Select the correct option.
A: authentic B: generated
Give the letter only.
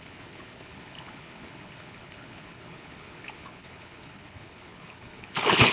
B